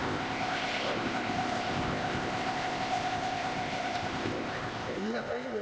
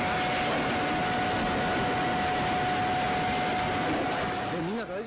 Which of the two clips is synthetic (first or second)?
first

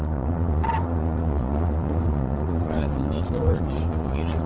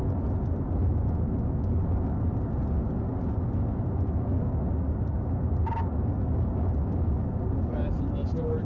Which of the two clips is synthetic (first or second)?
first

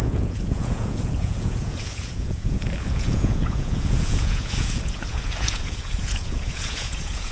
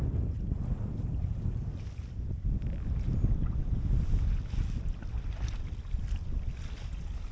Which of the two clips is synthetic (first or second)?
first